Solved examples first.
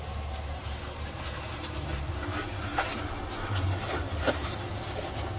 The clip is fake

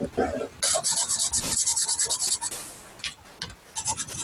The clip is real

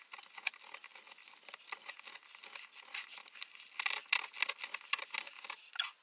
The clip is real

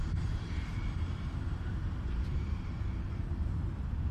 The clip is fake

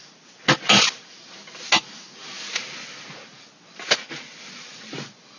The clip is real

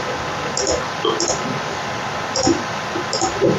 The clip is real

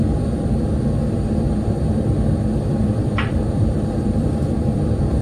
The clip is fake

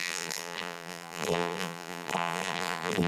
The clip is fake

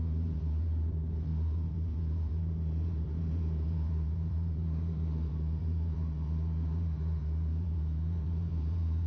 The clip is fake